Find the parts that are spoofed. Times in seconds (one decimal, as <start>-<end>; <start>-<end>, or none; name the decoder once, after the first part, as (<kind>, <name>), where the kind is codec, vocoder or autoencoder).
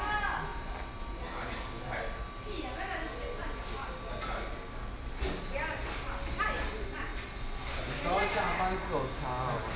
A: none